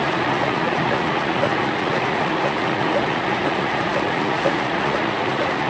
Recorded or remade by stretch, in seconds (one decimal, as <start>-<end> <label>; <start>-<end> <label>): 0.0-5.7 remade